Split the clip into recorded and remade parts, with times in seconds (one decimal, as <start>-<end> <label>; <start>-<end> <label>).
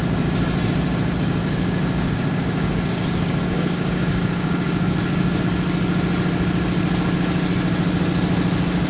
0.0-1.4 recorded; 1.4-5.4 remade; 5.4-8.9 recorded